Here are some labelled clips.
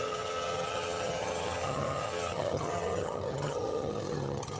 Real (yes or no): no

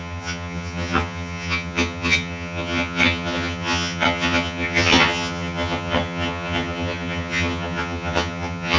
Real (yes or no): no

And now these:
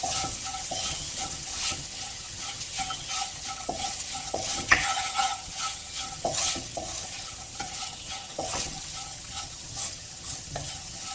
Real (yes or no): no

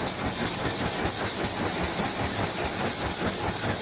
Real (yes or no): yes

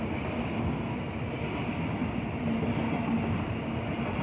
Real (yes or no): yes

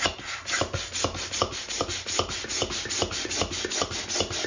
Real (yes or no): yes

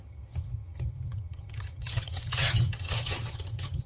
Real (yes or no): no